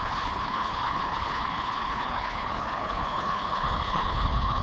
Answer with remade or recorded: remade